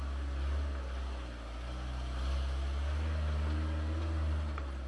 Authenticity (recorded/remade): recorded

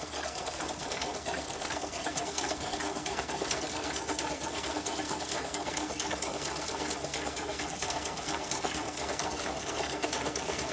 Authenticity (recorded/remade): remade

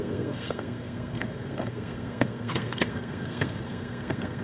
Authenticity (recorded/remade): remade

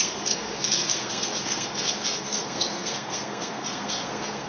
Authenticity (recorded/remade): remade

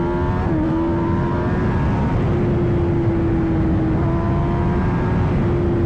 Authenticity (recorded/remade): recorded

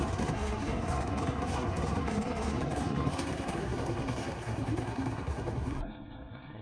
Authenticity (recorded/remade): remade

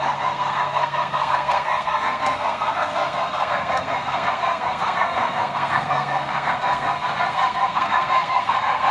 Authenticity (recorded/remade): remade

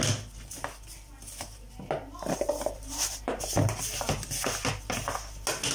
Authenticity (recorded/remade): recorded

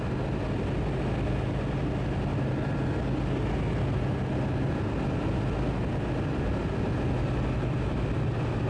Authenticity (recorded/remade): recorded